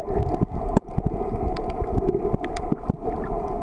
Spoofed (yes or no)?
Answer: no